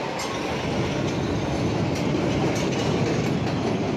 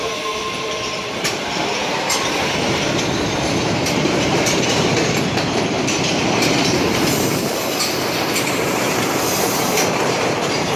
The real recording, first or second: first